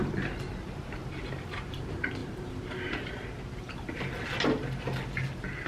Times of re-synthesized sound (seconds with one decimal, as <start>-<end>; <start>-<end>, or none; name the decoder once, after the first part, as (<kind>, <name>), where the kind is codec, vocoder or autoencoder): 0.0-0.8 (vocoder, BigVGAN v2); 2.2-3.7